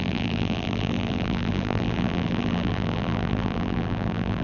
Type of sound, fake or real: fake